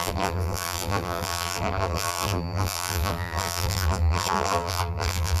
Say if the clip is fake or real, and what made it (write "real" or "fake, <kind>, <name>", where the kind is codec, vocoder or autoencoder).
fake, vocoder, BigVGAN v2